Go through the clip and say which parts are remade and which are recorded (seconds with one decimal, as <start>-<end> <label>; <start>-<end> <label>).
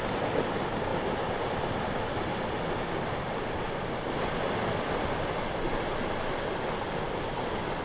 0.0-7.8 recorded